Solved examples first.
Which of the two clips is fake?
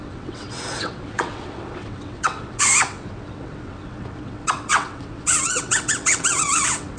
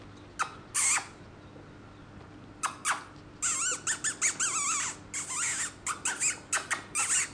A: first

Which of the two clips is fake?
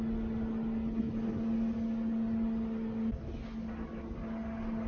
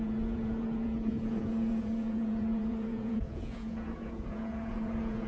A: second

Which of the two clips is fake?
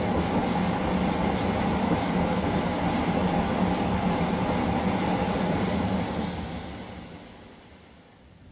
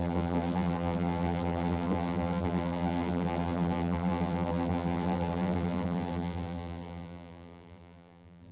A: second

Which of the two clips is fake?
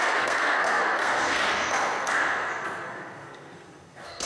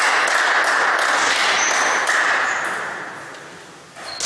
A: first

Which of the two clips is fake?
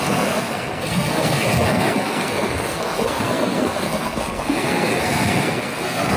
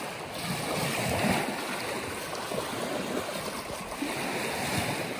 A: first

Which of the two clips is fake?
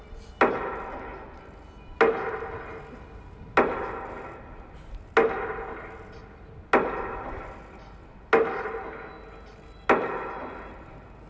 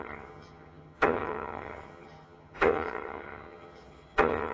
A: second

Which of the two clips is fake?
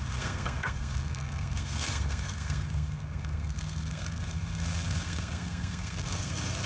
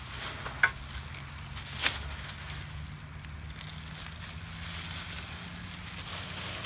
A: first